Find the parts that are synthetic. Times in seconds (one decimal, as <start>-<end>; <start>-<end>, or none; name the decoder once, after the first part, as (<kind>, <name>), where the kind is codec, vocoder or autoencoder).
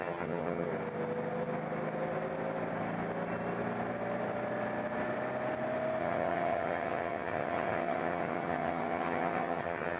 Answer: 0.0-0.7 (vocoder, HiFi-GAN); 6.0-10.0